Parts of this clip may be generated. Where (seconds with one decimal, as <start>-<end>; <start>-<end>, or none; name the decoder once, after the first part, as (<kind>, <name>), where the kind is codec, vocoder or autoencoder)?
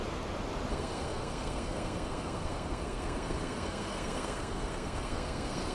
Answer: 0.7-5.7 (codec, SNAC)